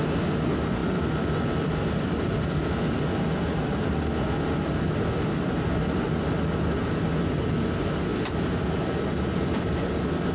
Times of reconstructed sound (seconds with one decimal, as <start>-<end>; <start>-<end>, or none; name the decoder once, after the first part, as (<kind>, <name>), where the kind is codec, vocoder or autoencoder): none